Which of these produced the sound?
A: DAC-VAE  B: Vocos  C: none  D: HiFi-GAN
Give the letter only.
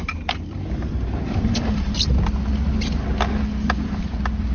C